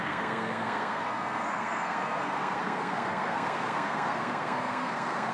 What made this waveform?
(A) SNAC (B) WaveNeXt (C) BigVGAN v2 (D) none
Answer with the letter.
A